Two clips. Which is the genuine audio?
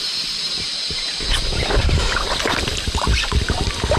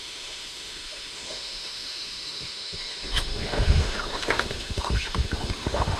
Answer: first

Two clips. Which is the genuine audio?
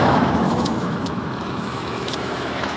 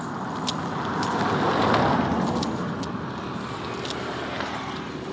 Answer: second